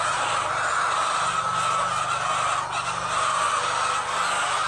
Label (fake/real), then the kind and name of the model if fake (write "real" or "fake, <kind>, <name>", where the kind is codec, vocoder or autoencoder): real